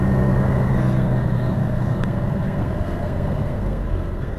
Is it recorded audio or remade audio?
remade